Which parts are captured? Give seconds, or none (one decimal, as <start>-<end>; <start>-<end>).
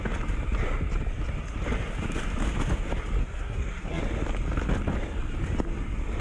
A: 0.0-3.2; 4.0-6.2